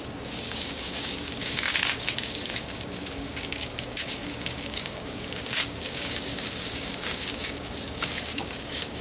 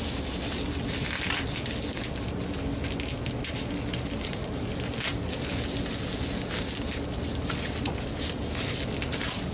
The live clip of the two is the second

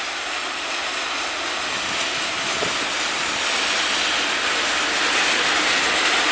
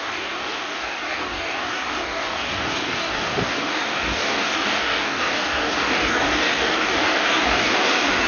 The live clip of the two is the first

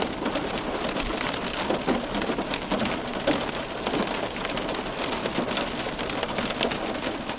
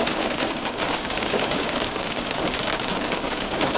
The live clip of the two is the first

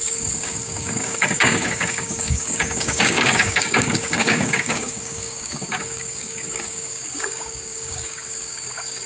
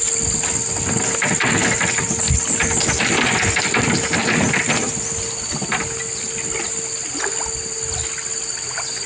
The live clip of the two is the second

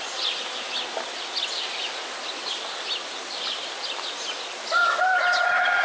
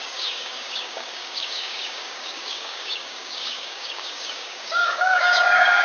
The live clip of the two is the first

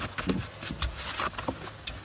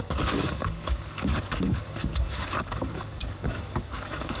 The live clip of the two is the first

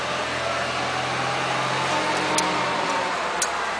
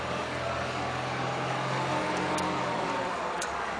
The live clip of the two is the first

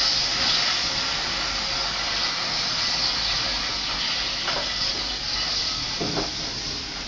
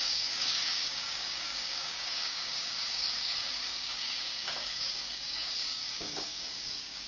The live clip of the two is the first